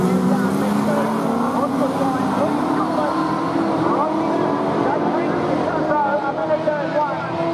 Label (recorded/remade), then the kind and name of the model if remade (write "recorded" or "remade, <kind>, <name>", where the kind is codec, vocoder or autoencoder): recorded